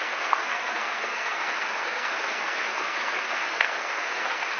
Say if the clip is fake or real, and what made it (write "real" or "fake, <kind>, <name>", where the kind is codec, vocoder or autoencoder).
fake, codec, SNAC